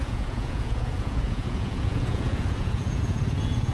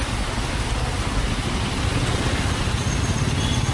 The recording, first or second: second